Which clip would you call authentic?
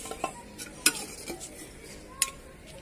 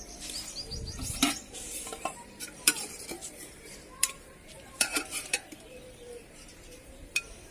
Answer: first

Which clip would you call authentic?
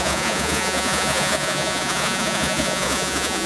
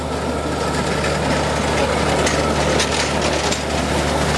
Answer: second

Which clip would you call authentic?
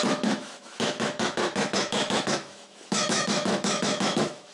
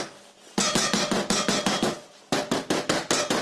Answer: second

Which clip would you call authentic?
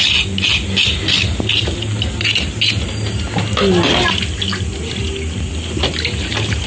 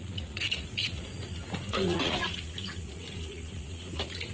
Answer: first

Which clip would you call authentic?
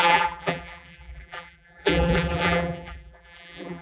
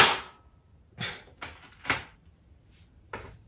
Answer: second